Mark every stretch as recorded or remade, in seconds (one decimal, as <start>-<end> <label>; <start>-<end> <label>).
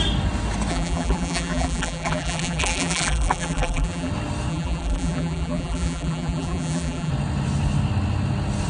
0.0-0.7 recorded; 0.7-4.1 remade; 4.1-4.5 recorded; 4.5-7.1 remade; 7.1-8.7 recorded